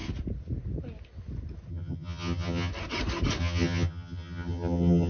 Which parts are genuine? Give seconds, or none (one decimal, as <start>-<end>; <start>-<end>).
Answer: 0.0-1.7; 2.7-3.4